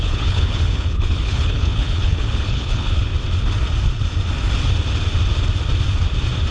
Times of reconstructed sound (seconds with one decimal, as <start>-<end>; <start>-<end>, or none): 0.0-3.1